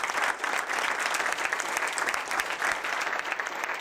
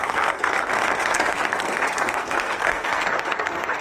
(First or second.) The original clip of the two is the first